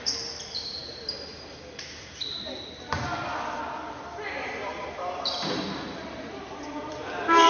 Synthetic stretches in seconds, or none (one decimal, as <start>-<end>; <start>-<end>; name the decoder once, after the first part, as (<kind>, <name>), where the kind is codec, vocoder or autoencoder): 0.0-7.5 (vocoder, BigVGAN v2)